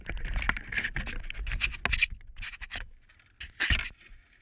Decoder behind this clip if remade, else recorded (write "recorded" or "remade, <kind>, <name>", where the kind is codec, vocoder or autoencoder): recorded